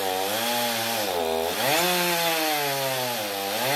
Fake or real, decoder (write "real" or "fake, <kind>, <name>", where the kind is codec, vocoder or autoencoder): real